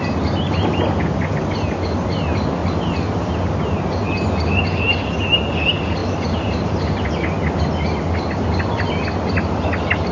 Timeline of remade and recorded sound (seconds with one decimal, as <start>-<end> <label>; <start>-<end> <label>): 0.0-6.0 recorded; 6.0-6.8 remade; 6.8-10.1 recorded